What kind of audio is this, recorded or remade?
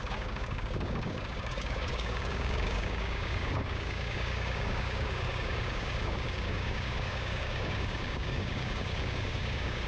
remade